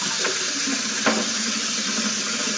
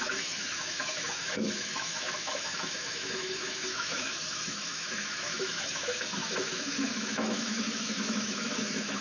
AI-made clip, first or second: second